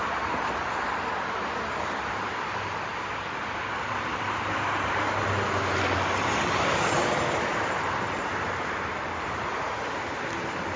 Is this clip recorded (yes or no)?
yes